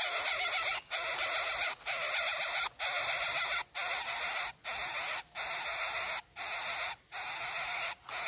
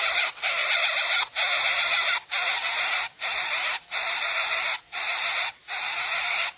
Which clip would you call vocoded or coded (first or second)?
second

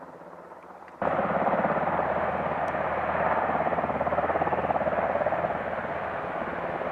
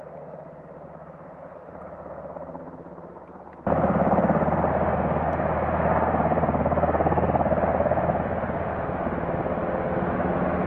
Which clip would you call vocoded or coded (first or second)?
first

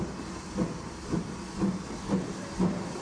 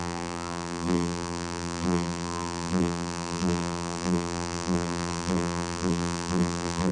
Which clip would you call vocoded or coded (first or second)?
second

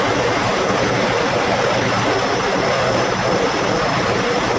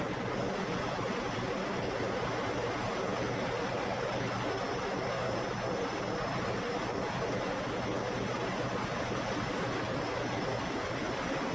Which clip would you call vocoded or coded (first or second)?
first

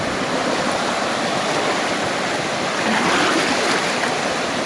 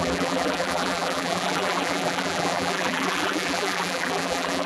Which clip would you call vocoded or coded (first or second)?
second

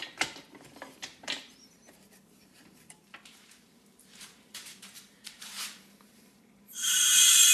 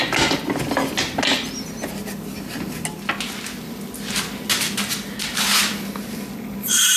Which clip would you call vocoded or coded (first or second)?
first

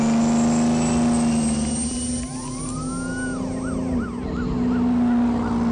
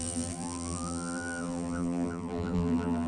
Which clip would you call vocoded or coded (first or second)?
second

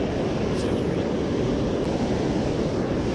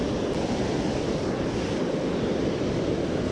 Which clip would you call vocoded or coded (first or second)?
second